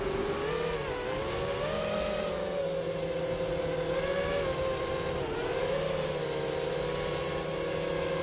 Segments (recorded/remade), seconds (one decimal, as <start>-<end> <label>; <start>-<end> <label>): 0.0-8.2 recorded